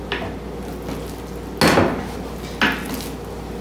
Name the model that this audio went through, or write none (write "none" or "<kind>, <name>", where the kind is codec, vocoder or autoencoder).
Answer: none